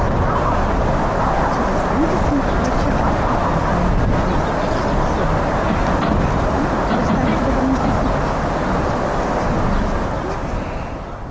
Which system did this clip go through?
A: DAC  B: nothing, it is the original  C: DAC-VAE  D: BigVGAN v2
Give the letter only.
B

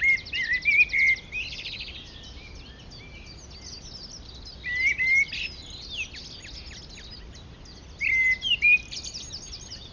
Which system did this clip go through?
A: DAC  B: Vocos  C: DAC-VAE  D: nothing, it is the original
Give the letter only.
D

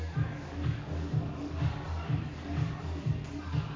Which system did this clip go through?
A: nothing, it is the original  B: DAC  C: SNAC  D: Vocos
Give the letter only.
B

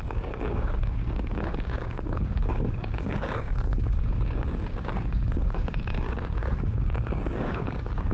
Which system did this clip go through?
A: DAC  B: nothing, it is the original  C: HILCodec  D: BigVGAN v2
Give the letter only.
A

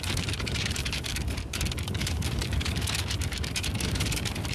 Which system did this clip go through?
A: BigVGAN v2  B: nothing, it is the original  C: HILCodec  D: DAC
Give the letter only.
D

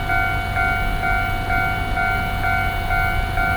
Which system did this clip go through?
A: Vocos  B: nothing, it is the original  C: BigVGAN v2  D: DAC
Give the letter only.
B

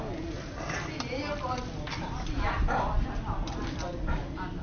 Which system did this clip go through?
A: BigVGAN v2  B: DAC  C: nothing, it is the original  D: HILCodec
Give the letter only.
C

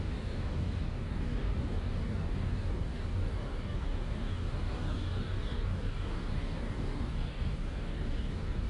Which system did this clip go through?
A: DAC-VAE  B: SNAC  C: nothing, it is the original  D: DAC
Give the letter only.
D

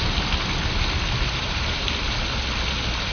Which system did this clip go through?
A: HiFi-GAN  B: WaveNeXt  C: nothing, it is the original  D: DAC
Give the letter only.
C